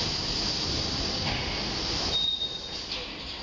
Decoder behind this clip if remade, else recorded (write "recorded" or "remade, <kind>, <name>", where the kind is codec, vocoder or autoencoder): recorded